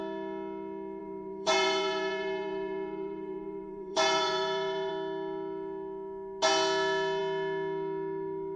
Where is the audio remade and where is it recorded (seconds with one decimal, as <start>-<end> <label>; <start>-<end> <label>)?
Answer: 0.0-1.0 recorded; 1.0-4.9 remade; 4.9-8.6 recorded